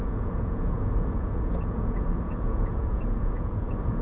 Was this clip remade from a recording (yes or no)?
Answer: yes